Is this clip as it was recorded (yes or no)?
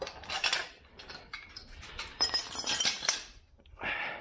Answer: no